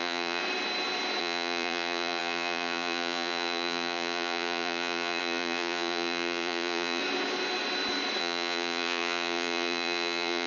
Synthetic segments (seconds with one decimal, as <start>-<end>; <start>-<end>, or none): 0.0-0.4; 1.2-7.0; 8.2-10.5